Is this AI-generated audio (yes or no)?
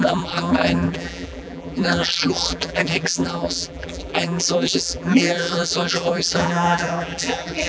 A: yes